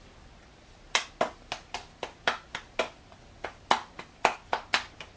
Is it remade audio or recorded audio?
recorded